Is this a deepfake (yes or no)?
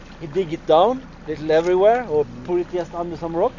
no